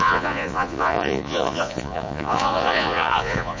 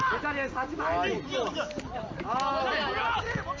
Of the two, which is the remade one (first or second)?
first